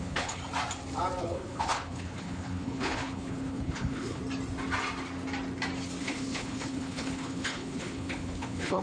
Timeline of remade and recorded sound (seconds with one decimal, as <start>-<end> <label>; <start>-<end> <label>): 0.0-0.4 remade; 0.4-1.2 recorded; 1.2-4.2 remade; 4.2-6.0 recorded; 6.0-8.8 remade